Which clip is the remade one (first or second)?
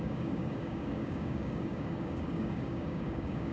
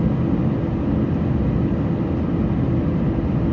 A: first